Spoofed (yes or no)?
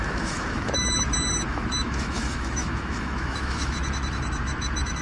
yes